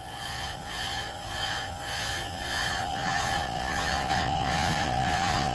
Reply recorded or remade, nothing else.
remade